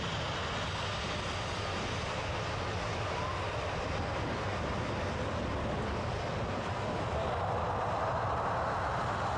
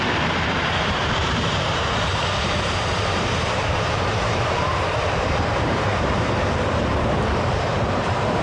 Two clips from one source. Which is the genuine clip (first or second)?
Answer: first